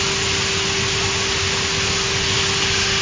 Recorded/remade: recorded